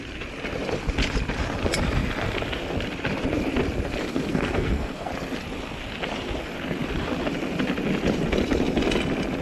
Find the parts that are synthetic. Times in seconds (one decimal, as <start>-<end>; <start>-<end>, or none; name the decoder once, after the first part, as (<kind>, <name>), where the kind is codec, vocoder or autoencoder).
4.3-5.1 (codec, SNAC)